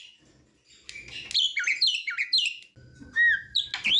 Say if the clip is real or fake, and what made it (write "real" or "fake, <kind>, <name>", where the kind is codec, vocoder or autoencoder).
real